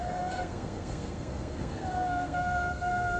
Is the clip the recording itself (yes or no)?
no